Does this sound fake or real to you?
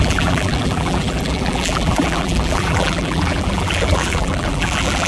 fake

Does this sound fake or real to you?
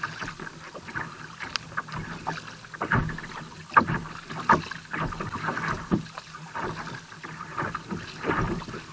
real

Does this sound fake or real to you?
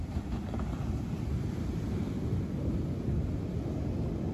real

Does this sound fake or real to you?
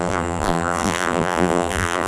fake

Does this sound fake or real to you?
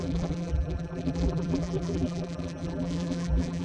fake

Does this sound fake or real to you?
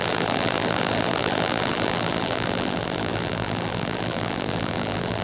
fake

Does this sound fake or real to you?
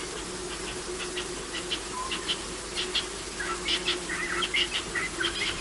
real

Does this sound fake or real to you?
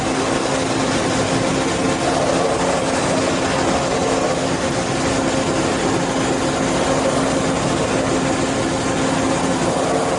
real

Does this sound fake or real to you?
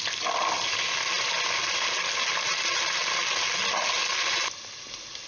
real